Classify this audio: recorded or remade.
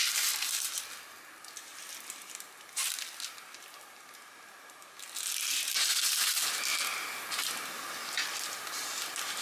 recorded